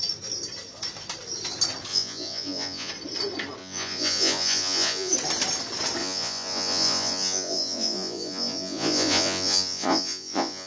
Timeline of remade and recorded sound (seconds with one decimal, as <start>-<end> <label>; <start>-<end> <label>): 0.0-1.9 recorded; 1.9-2.9 remade; 2.9-3.6 recorded; 3.6-5.1 remade; 5.1-6.0 recorded; 6.0-10.7 remade